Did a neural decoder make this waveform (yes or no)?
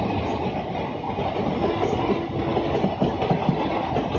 no